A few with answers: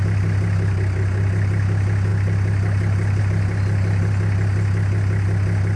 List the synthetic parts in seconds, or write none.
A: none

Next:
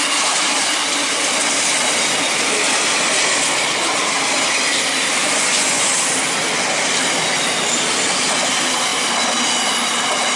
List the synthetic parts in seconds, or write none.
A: 5.2-5.9

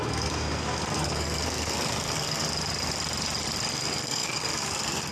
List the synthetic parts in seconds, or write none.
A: 0.0-2.4; 3.7-5.1

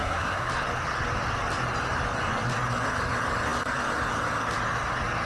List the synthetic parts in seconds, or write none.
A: 0.0-0.5

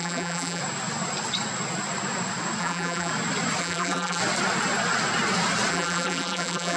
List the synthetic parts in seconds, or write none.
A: 0.0-0.6; 2.6-3.1; 3.6-4.2; 5.7-6.8

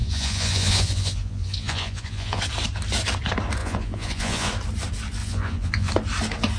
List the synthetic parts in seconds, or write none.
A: 0.0-2.4; 3.6-4.5; 5.2-5.9